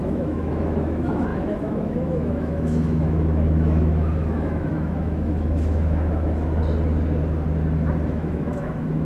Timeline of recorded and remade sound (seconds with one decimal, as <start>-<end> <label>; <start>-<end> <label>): 0.0-6.6 remade; 6.6-8.1 recorded; 8.1-9.0 remade